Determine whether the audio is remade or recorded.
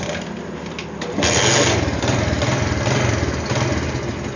recorded